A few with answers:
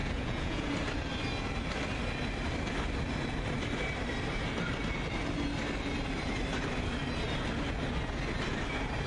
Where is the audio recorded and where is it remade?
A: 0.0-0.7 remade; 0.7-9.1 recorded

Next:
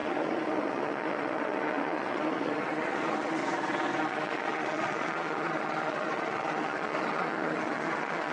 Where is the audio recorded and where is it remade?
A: 0.0-3.4 remade; 3.4-4.0 recorded; 4.0-8.3 remade